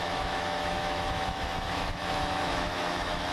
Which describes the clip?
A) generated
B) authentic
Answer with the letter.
A